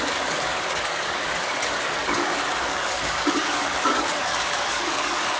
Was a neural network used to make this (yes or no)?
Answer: yes